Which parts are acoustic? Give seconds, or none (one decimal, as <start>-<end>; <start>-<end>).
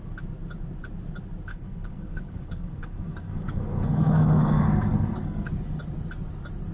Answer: 0.0-1.5; 5.5-6.7